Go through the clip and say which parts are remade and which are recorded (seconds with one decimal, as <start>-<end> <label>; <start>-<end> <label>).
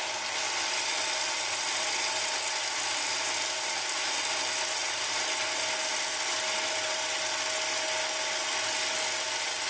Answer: 0.0-9.7 recorded